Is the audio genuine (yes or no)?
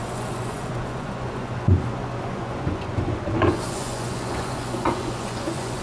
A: no